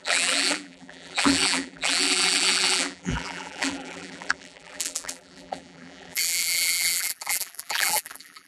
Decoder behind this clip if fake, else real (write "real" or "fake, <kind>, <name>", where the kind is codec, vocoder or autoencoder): fake, vocoder, BigVGAN v2